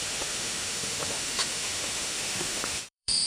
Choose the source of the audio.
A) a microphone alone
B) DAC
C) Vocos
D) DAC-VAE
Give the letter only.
D